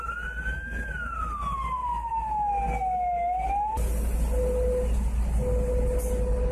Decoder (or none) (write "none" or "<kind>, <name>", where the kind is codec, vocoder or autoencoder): none